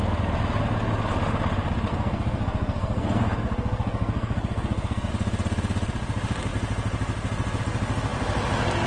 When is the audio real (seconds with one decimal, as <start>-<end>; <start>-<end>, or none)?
0.0-1.9; 5.1-8.9